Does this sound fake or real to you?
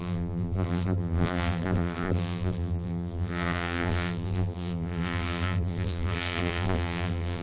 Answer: fake